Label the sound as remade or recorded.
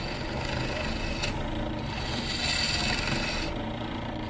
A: recorded